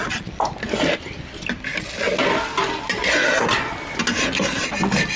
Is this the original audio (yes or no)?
yes